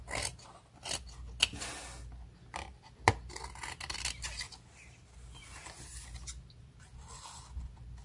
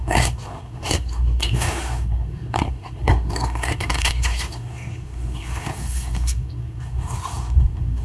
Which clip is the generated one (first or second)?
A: second